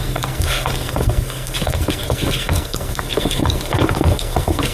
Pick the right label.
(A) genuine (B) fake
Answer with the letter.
B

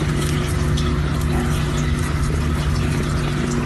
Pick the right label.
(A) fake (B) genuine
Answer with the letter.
B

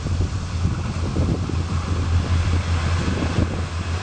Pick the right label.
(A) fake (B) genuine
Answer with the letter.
B